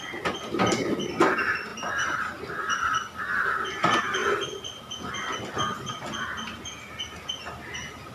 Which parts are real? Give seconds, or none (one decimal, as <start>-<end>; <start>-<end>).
0.0-8.1